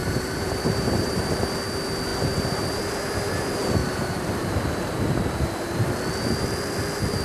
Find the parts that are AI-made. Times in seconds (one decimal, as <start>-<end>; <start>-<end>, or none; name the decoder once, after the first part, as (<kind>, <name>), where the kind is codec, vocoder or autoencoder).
0.0-1.4 (vocoder, BigVGAN v2); 3.8-5.4